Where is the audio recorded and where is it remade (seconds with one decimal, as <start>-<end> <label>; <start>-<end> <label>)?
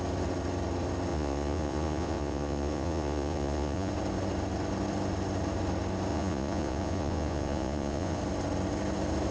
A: 0.0-1.1 recorded; 1.1-3.9 remade; 3.9-6.1 recorded; 6.1-8.2 remade; 8.2-9.3 recorded